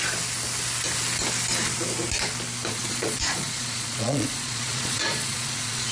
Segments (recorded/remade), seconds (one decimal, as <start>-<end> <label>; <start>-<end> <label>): 0.0-2.7 recorded; 2.7-5.9 remade